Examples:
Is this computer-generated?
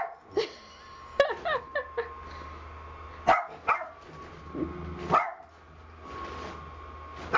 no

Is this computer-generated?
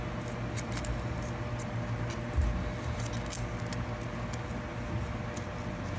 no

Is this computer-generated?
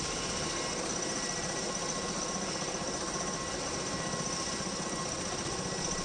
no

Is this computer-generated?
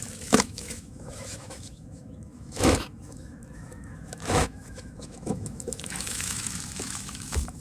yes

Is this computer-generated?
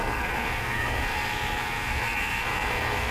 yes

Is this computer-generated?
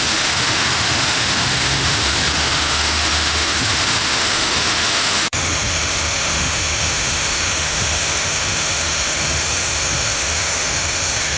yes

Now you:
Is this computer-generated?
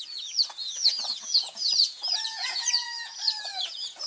yes